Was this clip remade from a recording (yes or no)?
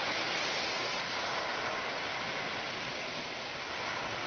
no